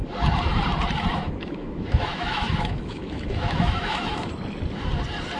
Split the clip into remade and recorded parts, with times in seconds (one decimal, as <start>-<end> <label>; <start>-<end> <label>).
0.0-1.1 recorded; 1.1-4.3 remade; 4.3-5.4 recorded